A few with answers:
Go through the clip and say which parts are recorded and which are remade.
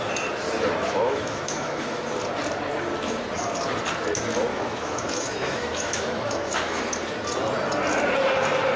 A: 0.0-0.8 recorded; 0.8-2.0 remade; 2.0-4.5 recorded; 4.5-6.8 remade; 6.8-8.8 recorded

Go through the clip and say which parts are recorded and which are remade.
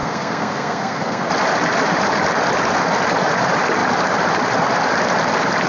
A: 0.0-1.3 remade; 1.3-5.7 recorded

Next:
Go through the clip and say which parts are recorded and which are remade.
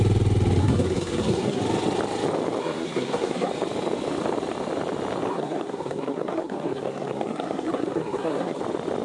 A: 0.0-0.6 recorded; 0.6-1.6 remade; 1.6-2.6 recorded; 2.6-3.5 remade; 3.5-5.3 recorded; 5.3-8.6 remade; 8.6-9.0 recorded